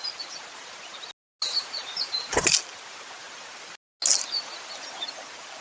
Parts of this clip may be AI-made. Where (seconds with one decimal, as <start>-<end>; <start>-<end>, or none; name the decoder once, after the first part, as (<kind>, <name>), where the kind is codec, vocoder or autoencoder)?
none